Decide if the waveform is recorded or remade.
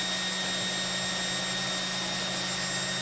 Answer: recorded